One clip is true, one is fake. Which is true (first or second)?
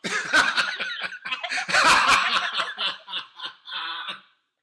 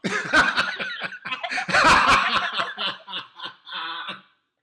second